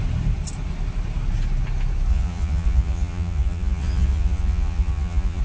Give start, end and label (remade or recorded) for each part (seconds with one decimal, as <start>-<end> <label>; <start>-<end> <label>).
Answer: 0.0-2.1 recorded; 2.1-5.4 remade